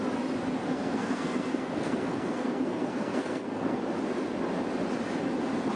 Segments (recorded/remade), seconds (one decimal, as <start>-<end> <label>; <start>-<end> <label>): 0.0-0.6 recorded; 0.6-3.8 remade; 3.8-5.8 recorded